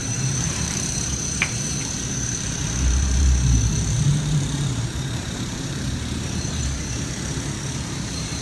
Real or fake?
fake